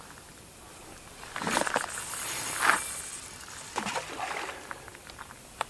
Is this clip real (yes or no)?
yes